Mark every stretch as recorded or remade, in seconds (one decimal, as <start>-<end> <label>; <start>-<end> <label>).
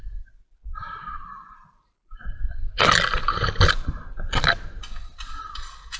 0.0-0.7 recorded; 0.7-4.3 remade; 4.3-6.0 recorded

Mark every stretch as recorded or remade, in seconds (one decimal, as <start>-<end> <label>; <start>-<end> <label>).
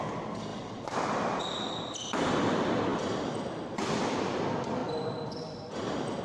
0.0-0.5 recorded; 0.5-2.3 remade; 2.3-2.9 recorded; 2.9-4.2 remade; 4.2-4.8 recorded; 4.8-5.7 remade; 5.7-6.2 recorded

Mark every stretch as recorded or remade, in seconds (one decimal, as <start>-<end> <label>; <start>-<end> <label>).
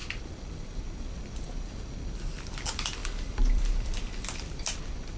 0.0-1.9 remade; 1.9-3.0 recorded; 3.0-4.6 remade; 4.6-5.2 recorded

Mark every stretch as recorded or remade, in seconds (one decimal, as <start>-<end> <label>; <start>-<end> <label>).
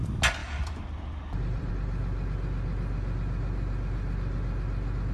0.0-0.4 recorded; 0.4-1.7 remade; 1.7-5.1 recorded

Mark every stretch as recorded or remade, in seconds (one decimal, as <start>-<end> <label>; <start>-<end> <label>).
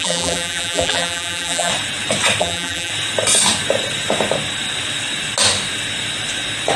0.0-1.7 remade; 1.7-2.4 recorded; 2.4-2.9 remade; 2.9-6.8 recorded